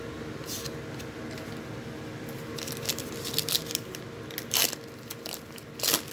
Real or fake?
real